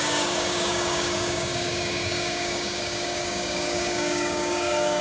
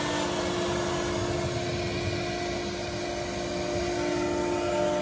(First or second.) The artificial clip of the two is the first